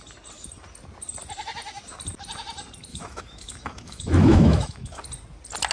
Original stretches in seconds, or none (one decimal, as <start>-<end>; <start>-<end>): 0.0-2.9; 5.0-5.7